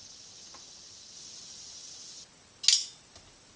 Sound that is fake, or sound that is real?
real